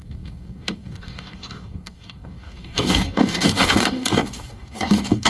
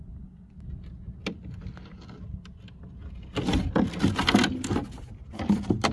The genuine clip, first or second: second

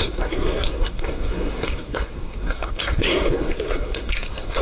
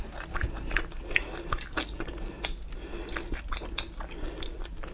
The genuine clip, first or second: second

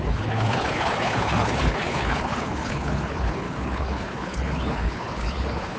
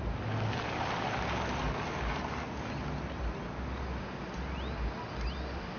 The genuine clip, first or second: second